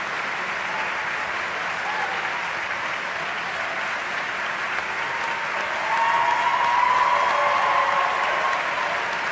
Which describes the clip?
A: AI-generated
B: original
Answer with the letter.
B